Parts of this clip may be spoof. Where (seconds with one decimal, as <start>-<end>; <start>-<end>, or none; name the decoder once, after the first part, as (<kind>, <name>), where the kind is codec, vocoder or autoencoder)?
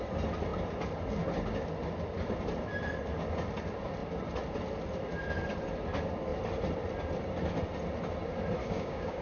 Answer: 8.6-9.2 (codec, DAC)